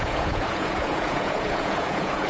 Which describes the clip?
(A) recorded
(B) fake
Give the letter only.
B